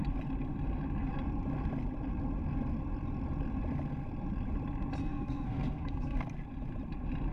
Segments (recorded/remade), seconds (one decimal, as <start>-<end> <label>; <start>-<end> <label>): 0.0-5.0 recorded; 5.0-6.2 remade; 6.2-7.3 recorded